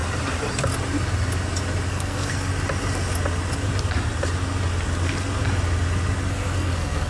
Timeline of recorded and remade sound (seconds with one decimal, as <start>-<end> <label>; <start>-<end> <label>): 0.0-1.9 recorded; 1.9-2.5 remade; 2.5-6.3 recorded; 6.3-7.1 remade